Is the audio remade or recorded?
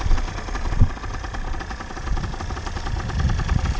recorded